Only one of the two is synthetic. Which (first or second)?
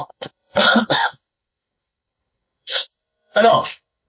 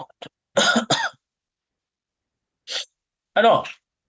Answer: first